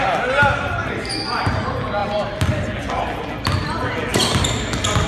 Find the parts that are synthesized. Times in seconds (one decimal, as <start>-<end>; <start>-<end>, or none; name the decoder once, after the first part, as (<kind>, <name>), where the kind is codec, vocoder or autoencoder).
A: none